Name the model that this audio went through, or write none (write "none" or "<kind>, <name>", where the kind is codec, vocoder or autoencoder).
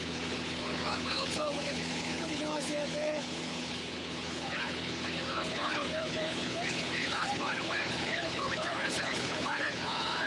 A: codec, HILCodec